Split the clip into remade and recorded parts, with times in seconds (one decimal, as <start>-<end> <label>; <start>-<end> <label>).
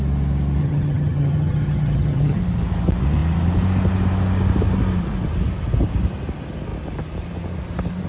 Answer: 0.0-0.6 recorded; 0.6-2.4 remade; 2.4-8.1 recorded